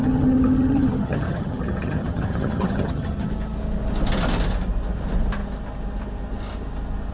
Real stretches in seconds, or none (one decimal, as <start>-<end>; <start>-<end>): 3.3-7.1